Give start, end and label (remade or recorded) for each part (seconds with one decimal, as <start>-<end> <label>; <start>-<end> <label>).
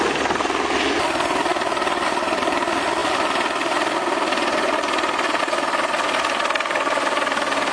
0.0-1.5 recorded; 1.5-2.4 remade; 2.4-7.7 recorded